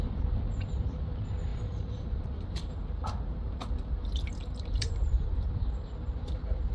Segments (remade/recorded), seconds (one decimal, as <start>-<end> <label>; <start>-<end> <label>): 0.0-1.5 recorded; 1.5-5.5 remade; 5.5-6.7 recorded